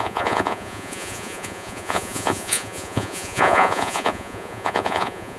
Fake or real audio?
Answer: fake